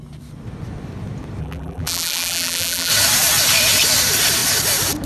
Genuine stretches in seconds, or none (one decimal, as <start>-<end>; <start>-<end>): 0.0-1.4; 2.9-5.1